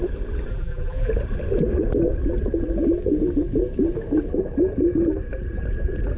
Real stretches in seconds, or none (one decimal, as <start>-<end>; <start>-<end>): 0.0-0.5; 1.1-6.2